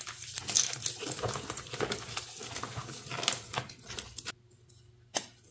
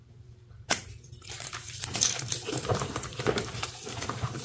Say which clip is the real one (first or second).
first